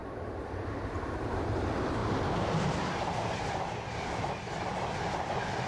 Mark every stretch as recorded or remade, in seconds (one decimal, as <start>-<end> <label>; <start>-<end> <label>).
0.0-1.5 remade; 1.5-2.0 recorded; 2.0-5.7 remade